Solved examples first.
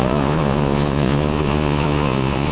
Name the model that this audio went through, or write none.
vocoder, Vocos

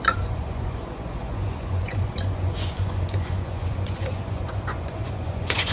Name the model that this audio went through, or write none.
vocoder, Vocos